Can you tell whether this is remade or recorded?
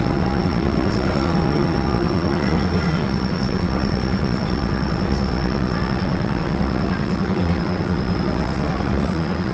remade